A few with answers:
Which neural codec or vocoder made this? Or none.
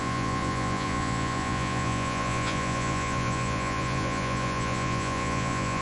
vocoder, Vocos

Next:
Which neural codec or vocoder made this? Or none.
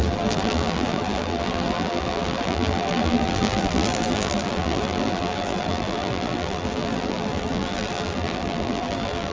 vocoder, BigVGAN v2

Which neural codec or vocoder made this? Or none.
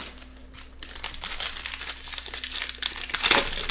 none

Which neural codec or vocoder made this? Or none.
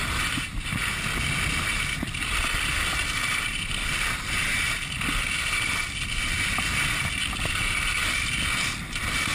none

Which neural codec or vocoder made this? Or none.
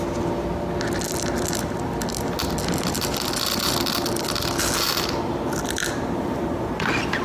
none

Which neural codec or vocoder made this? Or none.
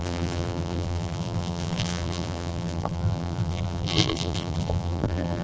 vocoder, BigVGAN v2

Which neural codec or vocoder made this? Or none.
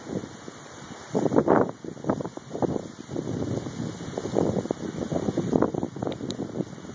none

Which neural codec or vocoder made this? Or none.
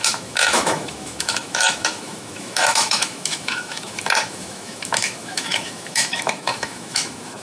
autoencoder, DAC-VAE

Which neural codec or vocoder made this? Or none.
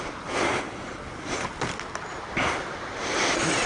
none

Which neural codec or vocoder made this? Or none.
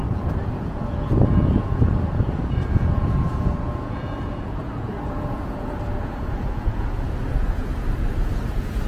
vocoder, Vocos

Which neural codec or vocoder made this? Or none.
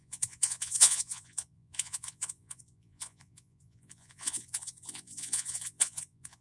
vocoder, Vocos